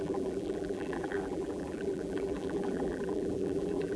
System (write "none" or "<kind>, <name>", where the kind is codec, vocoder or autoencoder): vocoder, BigVGAN v2